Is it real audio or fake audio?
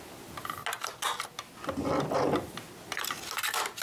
real